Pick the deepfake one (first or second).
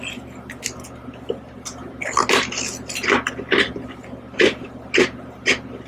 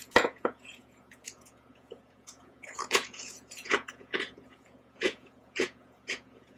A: second